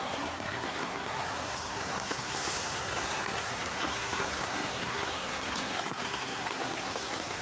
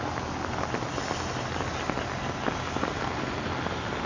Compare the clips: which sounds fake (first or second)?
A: first